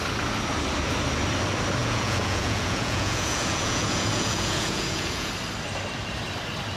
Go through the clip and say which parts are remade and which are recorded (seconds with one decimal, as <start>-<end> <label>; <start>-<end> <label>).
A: 0.0-1.8 recorded; 1.8-5.3 remade; 5.3-6.8 recorded